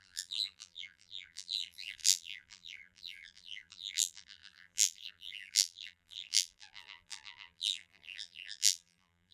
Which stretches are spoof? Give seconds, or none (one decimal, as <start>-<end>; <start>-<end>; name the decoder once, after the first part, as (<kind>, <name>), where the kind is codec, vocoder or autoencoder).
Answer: 0.0-9.3 (vocoder, BigVGAN v2)